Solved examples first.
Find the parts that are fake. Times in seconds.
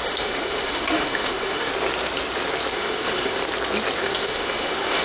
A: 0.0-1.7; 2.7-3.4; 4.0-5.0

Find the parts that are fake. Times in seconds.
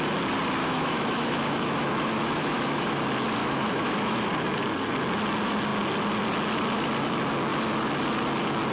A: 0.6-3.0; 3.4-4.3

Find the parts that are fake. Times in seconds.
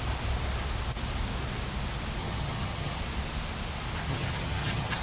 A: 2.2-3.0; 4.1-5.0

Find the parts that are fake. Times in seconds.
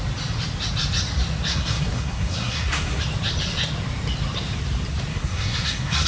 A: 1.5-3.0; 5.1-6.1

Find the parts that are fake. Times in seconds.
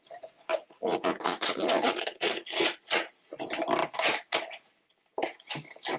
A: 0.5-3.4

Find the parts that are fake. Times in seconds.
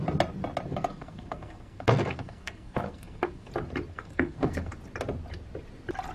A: 0.7-3.5; 3.9-4.7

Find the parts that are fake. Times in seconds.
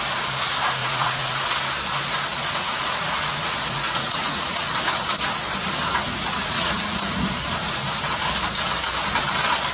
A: 0.8-1.5; 2.3-4.7; 6.4-7.0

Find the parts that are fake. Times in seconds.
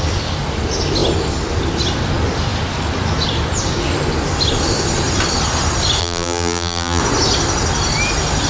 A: 6.0-7.0